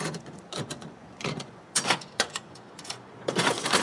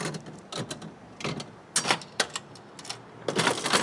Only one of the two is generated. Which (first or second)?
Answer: first